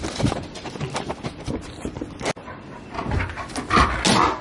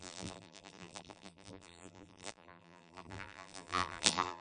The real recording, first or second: first